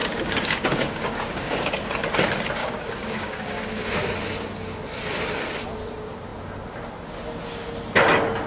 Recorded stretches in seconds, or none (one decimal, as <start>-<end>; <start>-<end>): 1.7-2.6; 3.9-8.5